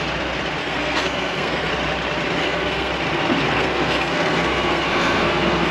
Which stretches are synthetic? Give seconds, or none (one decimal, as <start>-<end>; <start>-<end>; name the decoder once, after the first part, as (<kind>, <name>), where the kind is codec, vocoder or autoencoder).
0.6-1.7 (codec, SNAC); 2.4-2.9; 3.4-5.7